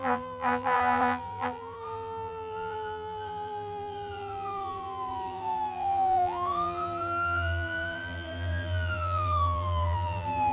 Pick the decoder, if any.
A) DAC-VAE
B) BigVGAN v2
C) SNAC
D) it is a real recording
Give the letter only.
B